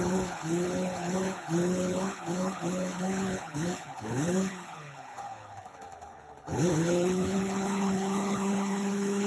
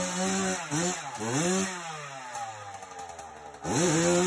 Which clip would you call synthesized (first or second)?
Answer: first